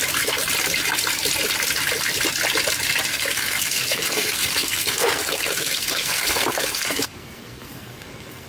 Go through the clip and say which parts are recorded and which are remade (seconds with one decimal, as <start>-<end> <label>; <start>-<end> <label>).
0.0-3.1 recorded; 3.1-8.5 remade